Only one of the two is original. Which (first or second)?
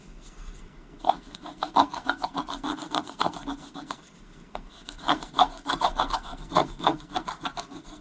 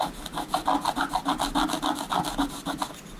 second